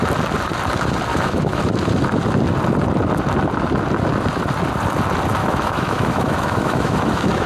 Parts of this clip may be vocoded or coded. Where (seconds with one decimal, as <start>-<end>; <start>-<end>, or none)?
1.1-1.6; 5.4-7.5